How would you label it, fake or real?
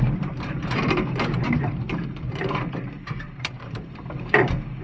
fake